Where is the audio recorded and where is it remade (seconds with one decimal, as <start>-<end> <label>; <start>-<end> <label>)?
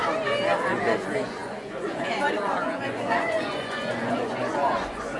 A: 0.0-0.8 recorded; 0.8-5.2 remade